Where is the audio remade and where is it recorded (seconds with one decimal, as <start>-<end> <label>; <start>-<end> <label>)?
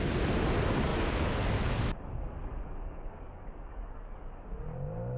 0.0-2.4 recorded; 2.4-4.4 remade; 4.4-5.2 recorded